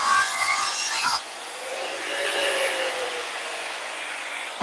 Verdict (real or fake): fake